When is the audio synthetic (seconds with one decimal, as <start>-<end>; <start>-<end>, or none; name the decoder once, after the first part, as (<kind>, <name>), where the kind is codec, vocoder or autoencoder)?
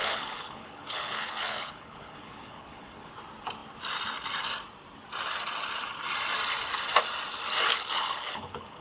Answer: 0.0-3.1 (codec, HILCodec); 7.7-8.8